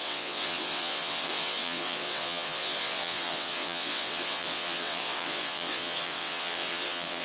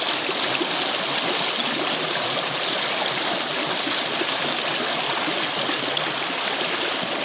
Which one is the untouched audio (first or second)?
second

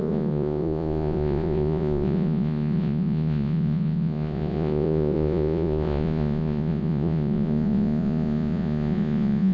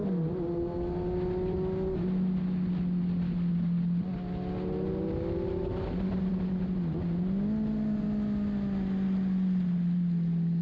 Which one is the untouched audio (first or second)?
second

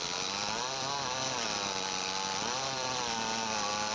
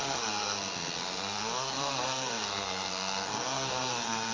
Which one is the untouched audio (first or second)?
first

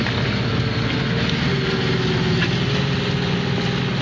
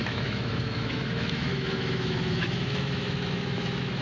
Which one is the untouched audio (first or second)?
first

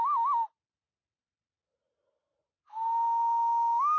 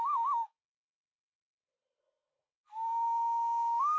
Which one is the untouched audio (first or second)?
first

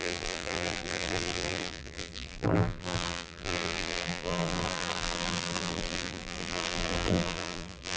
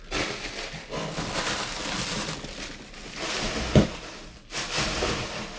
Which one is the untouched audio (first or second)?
second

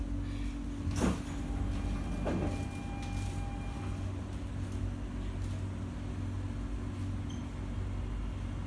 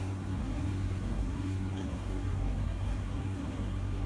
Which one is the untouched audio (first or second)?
first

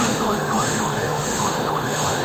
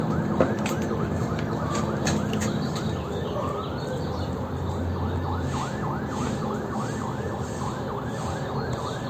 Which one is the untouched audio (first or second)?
second